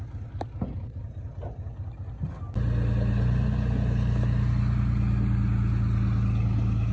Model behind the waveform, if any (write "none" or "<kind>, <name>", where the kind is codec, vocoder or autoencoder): none